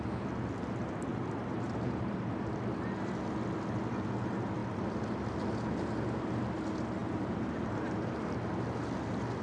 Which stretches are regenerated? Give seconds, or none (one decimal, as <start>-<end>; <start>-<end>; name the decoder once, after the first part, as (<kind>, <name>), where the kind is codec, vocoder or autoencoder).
1.1-2.5 (vocoder, BigVGAN v2); 7.0-8.1